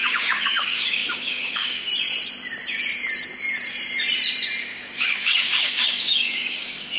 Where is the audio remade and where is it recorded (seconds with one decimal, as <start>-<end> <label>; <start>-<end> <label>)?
0.0-1.9 remade; 1.9-4.6 recorded; 4.6-7.0 remade